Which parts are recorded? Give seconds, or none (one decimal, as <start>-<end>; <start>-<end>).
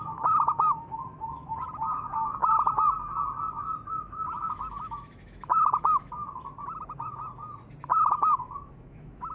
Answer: 2.4-3.9; 6.2-8.1